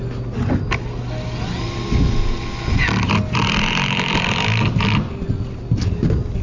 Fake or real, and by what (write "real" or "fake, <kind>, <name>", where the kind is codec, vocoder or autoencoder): real